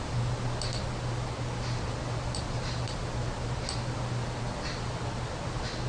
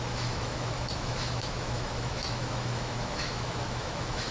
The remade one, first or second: second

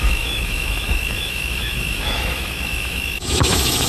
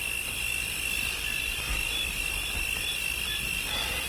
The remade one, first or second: first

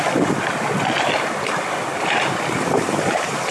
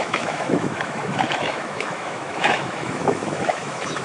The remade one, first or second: second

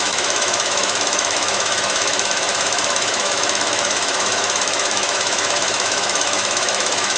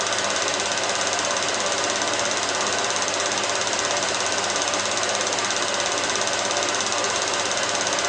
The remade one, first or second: first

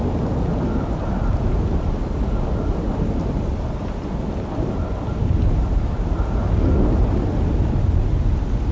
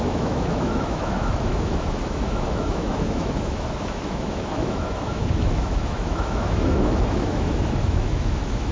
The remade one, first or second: second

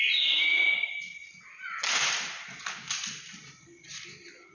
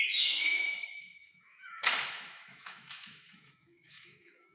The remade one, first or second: second